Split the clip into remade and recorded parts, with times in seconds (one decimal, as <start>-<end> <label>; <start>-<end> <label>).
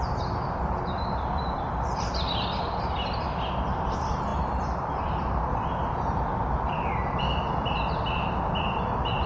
0.0-4.3 recorded; 4.3-5.0 remade; 5.0-9.3 recorded